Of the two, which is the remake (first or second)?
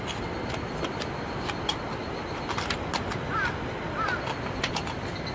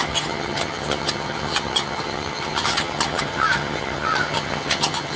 second